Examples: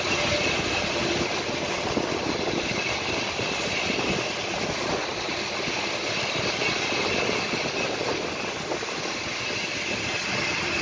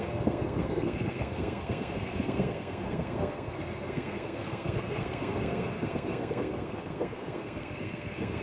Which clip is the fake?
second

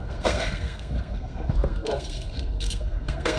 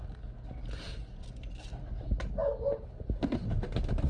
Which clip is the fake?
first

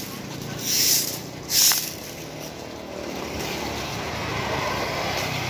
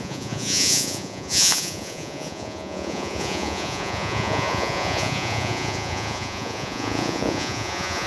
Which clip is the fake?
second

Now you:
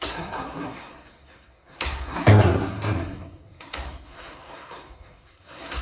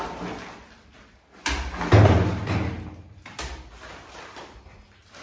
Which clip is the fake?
first